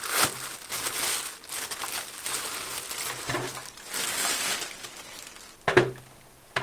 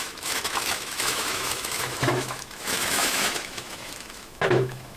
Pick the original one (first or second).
first